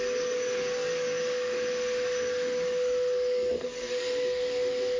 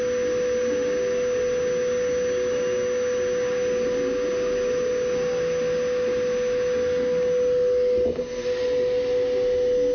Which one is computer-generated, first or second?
first